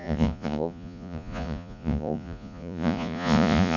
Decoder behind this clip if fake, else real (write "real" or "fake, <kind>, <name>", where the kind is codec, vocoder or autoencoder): fake, vocoder, Vocos